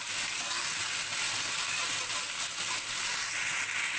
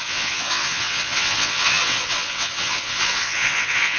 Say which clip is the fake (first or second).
second